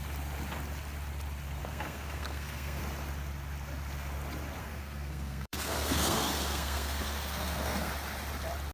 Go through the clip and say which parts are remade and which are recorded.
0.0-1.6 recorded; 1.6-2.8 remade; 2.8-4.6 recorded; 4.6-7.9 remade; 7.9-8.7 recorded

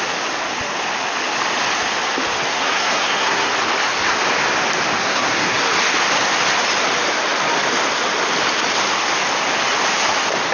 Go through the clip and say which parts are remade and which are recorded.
0.0-2.5 recorded; 2.5-3.5 remade; 3.5-5.0 recorded; 5.0-5.6 remade; 5.6-10.5 recorded